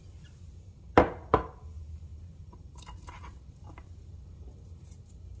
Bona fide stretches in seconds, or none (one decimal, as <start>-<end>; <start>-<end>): 0.0-2.1